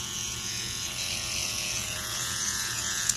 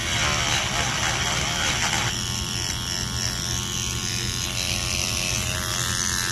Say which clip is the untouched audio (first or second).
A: second